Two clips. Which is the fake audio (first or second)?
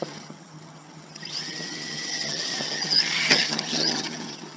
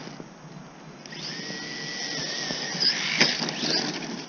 first